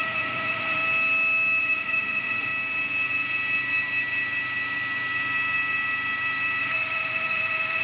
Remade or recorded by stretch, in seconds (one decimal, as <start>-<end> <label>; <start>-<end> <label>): 0.0-0.8 remade; 0.8-1.6 recorded; 1.6-2.5 remade; 2.5-6.6 recorded; 6.6-7.8 remade